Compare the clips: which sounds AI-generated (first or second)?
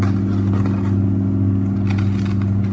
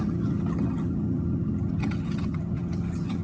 second